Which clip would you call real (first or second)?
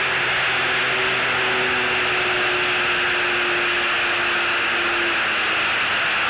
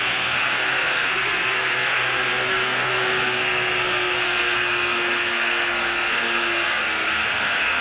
first